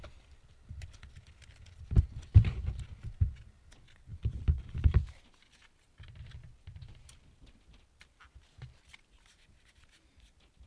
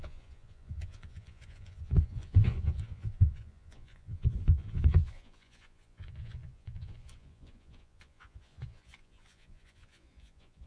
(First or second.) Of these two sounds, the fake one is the second